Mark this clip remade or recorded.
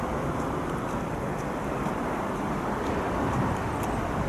recorded